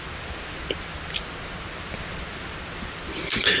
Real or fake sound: real